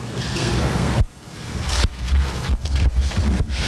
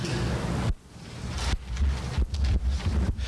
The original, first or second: second